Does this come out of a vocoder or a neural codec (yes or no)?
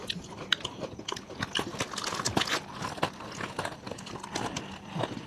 no